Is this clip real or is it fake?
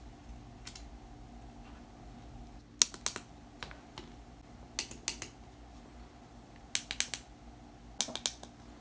real